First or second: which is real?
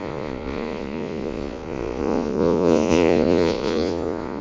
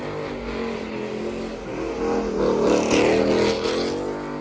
second